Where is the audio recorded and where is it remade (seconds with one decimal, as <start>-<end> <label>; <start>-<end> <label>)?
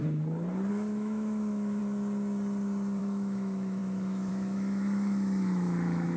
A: 0.0-0.7 recorded; 0.7-1.8 remade; 1.8-3.0 recorded; 3.0-6.2 remade